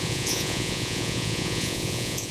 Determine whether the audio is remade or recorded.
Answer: remade